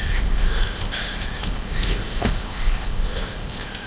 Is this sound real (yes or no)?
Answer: no